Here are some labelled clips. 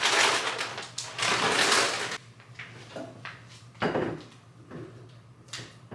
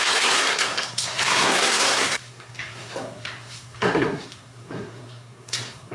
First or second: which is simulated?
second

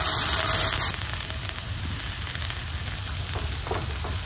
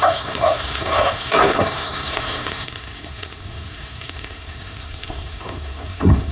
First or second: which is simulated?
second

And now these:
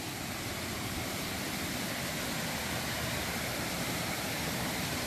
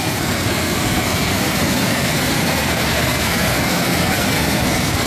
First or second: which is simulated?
second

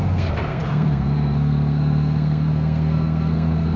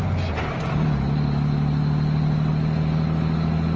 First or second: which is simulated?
first